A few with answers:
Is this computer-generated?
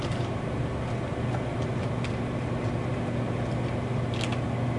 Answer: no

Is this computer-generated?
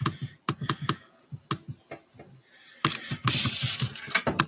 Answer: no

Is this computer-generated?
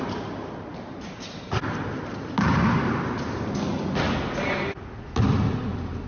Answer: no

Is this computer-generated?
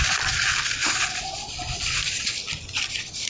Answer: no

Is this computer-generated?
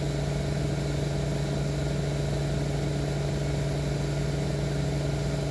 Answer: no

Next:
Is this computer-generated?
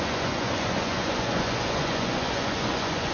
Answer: yes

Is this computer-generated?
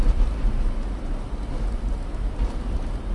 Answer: no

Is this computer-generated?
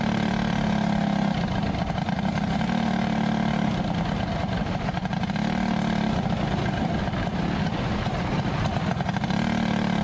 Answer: no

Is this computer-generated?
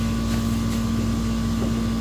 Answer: no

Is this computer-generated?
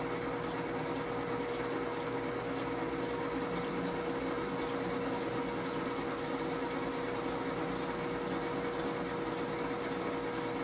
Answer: no